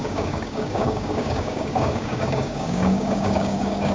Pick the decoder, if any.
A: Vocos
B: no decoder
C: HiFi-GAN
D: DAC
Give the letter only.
D